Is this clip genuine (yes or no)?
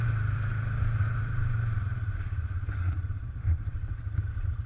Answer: no